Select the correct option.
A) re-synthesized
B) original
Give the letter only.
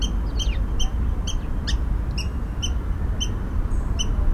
B